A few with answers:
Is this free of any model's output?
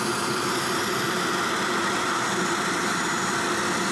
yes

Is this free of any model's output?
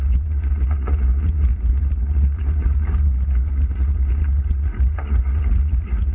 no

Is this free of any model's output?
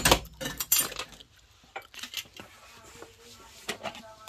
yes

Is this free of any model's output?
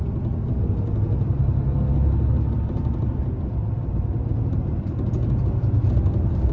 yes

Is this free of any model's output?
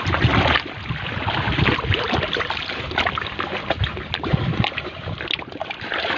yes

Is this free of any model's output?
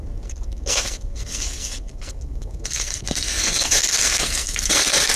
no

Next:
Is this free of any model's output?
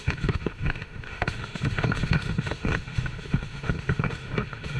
no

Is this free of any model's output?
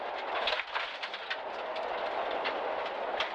yes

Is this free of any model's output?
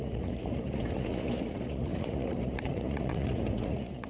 no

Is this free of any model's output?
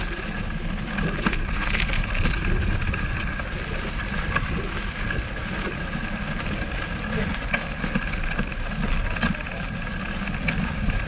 yes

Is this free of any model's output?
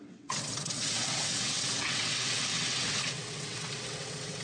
no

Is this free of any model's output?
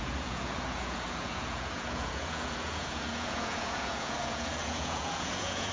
no